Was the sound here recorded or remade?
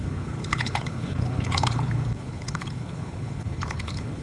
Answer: remade